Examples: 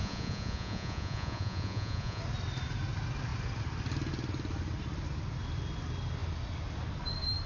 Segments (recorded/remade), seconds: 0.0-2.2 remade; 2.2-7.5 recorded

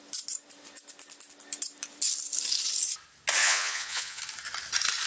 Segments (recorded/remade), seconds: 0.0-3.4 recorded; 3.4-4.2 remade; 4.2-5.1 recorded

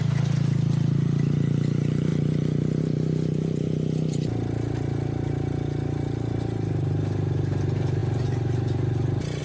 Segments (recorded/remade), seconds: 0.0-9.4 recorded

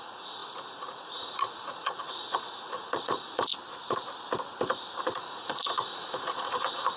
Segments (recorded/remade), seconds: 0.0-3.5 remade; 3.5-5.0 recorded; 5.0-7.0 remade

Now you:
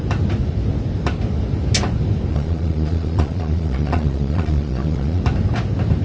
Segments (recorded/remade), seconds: 0.0-2.3 recorded; 2.3-5.2 remade; 5.2-6.0 recorded

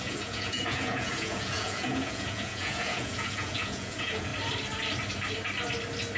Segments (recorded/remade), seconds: 0.0-4.3 remade; 4.3-6.2 recorded

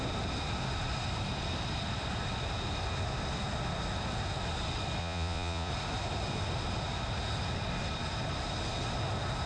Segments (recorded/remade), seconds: 0.0-5.0 recorded; 5.0-5.7 remade; 5.7-9.5 recorded

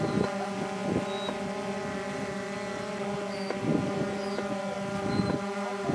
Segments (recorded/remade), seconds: 0.0-5.9 recorded